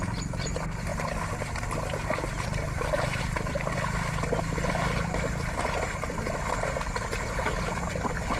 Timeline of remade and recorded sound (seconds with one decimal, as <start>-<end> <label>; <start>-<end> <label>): 0.0-8.4 recorded